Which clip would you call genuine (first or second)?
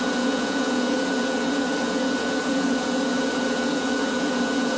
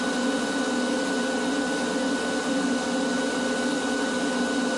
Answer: second